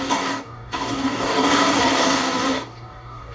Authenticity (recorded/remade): remade